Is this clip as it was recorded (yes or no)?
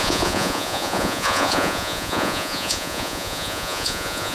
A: no